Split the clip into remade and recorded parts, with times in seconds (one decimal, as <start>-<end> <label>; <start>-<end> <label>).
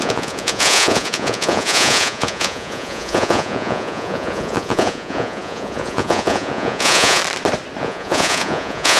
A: 0.0-7.2 remade; 7.2-7.8 recorded; 7.8-9.0 remade